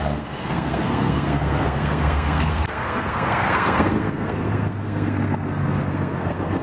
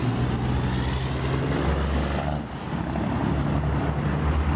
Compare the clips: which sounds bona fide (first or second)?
second